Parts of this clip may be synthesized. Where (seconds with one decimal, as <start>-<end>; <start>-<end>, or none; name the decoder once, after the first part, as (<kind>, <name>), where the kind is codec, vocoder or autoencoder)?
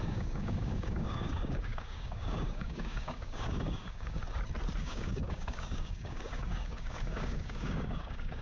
0.0-4.2 (codec, DAC); 4.8-8.4